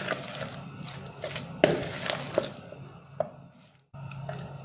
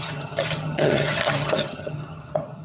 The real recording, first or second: first